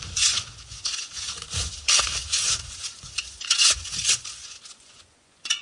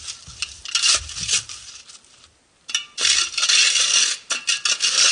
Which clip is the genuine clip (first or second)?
second